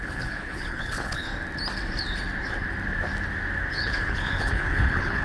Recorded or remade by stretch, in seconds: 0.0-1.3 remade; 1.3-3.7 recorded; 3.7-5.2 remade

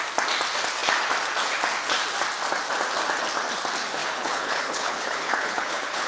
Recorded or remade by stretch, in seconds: 0.0-4.0 recorded; 4.0-6.1 remade

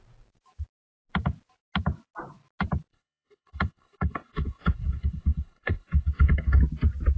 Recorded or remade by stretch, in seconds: 0.0-2.9 recorded; 2.9-6.6 remade; 6.6-7.2 recorded

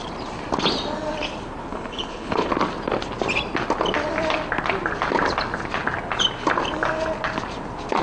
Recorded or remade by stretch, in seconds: 0.0-1.7 recorded; 1.7-2.5 remade; 2.5-8.0 recorded

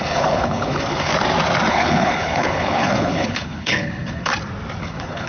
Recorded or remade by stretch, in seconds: 0.0-1.1 remade; 1.1-1.7 recorded; 1.7-4.3 remade; 4.3-4.8 recorded; 4.8-5.3 remade

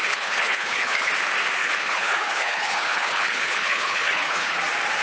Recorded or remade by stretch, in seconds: 0.0-1.1 remade; 1.1-1.6 recorded; 1.6-4.6 remade; 4.6-5.0 recorded

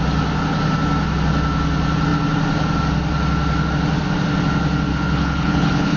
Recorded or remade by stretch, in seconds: 0.0-4.9 recorded; 4.9-6.0 remade

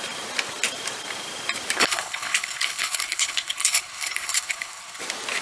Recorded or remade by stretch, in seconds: 0.0-1.8 recorded; 1.8-5.0 remade; 5.0-5.4 recorded